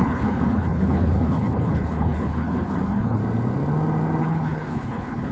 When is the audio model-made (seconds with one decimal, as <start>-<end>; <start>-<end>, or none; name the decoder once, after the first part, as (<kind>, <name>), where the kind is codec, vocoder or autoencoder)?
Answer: 0.0-3.2 (codec, HILCodec); 4.2-5.3